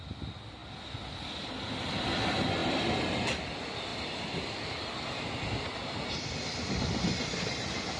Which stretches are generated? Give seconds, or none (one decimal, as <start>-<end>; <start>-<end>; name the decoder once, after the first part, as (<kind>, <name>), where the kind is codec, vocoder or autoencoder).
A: none